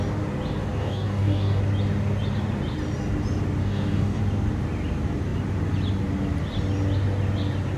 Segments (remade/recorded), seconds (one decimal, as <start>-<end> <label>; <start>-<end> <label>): 0.0-0.8 recorded; 0.8-1.6 remade; 1.6-3.6 recorded; 3.6-4.2 remade; 4.2-7.8 recorded